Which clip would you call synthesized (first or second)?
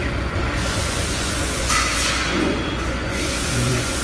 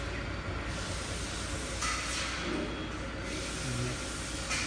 first